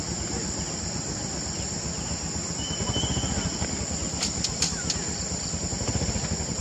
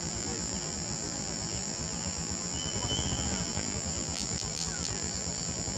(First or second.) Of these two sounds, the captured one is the first